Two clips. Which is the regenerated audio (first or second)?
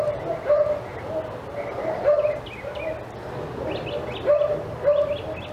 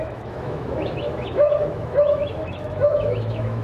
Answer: second